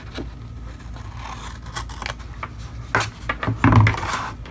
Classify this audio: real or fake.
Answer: real